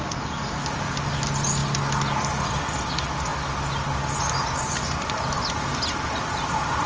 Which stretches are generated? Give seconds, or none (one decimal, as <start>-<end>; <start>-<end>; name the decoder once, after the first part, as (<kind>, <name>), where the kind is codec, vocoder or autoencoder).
none